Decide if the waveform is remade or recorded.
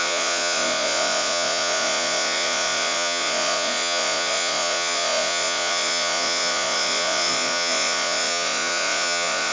remade